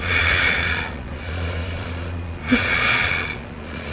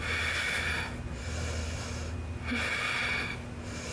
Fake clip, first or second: first